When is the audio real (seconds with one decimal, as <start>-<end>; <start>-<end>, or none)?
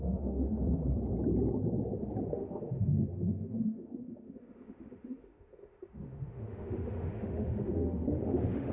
0.8-2.3